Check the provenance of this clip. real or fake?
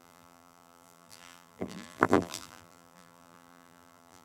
fake